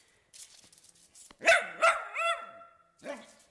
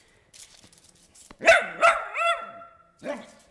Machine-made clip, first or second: second